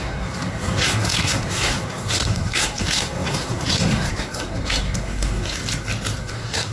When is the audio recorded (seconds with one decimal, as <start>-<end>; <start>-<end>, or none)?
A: 5.6-6.2